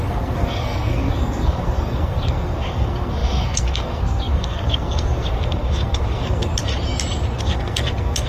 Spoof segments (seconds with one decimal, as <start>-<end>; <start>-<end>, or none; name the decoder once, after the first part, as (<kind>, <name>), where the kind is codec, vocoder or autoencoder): 0.0-6.5 (codec, SNAC); 7.4-8.3

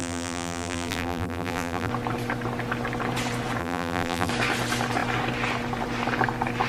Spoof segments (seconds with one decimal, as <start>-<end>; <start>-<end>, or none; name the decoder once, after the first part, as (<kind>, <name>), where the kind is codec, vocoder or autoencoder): 0.0-1.9 (vocoder, BigVGAN v2); 3.6-4.3